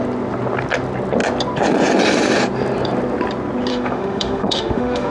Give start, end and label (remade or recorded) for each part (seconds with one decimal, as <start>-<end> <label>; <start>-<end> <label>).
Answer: 0.0-3.7 recorded; 3.7-5.1 remade